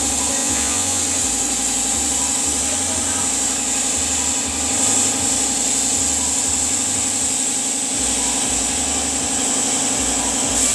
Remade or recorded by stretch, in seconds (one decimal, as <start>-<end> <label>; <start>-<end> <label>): 0.0-0.4 recorded; 0.4-1.0 remade; 1.0-10.7 recorded